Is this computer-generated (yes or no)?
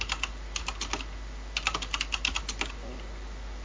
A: no